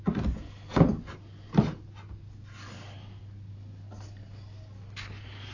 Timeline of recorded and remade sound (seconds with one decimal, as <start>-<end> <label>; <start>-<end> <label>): 0.0-5.5 recorded